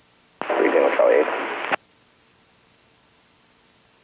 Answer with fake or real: real